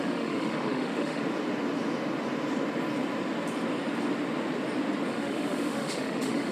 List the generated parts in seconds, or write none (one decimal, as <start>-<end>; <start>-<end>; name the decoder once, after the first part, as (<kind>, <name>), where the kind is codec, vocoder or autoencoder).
0.0-1.2 (autoencoder, DAC-VAE); 5.1-6.5